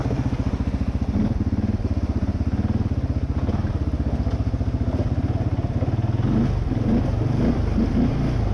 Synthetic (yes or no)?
no